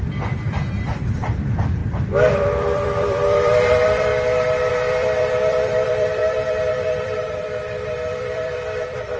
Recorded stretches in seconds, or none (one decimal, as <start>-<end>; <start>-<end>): 4.1-4.7